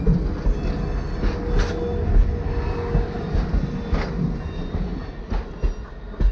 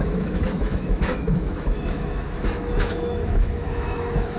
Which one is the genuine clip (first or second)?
first